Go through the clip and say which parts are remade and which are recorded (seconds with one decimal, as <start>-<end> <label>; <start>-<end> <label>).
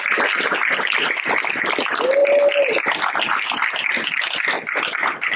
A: 0.0-5.4 recorded